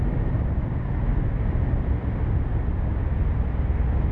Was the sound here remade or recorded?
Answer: recorded